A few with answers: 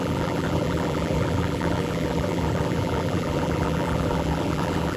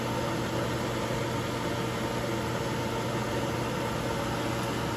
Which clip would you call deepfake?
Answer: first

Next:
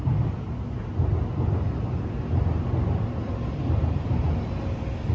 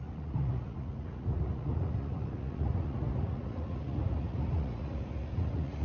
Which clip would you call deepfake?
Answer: second